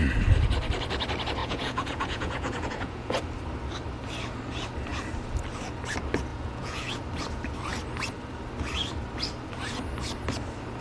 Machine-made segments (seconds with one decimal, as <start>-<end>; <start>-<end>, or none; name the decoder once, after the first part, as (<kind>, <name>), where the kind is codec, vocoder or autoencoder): 1.4-3.2 (vocoder, Vocos); 6.3-7.0

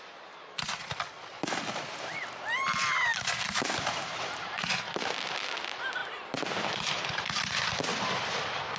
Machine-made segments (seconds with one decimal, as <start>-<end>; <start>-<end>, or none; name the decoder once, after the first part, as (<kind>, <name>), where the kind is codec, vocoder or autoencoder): 0.0-3.1 (vocoder, BigVGAN v2); 5.6-6.0; 7.9-8.8